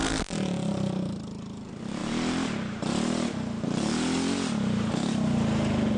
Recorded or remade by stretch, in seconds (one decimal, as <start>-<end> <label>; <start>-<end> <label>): 0.0-6.0 recorded